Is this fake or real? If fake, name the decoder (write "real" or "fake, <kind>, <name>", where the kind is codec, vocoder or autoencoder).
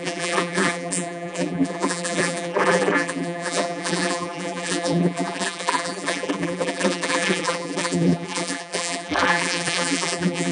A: fake, vocoder, BigVGAN v2